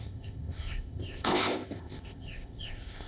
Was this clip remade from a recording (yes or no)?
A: yes